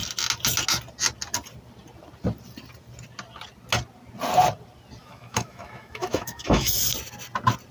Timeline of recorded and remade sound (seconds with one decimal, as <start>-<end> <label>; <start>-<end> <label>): 0.0-5.0 recorded; 5.0-6.8 remade; 6.8-7.7 recorded

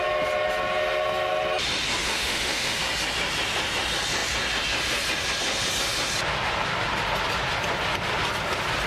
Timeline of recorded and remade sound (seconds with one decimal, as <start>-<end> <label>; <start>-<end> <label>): 0.0-2.0 recorded; 2.0-2.8 remade; 2.8-8.9 recorded

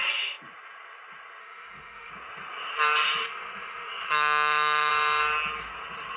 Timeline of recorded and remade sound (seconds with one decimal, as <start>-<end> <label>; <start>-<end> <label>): 0.0-1.4 recorded; 1.4-2.1 remade; 2.1-3.2 recorded; 3.2-4.9 remade; 4.9-6.2 recorded

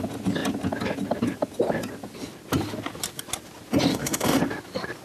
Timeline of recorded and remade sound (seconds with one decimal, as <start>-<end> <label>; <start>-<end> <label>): 0.0-3.9 recorded; 3.9-4.4 remade; 4.4-5.0 recorded